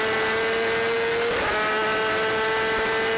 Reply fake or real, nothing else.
real